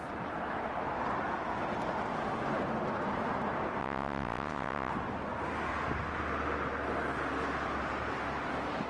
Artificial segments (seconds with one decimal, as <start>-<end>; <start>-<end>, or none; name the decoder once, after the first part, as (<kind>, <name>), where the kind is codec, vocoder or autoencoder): 3.8-4.9 (vocoder, WaveNeXt)